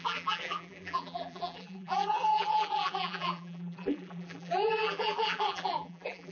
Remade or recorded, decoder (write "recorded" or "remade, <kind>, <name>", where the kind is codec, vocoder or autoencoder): remade, vocoder, BigVGAN v2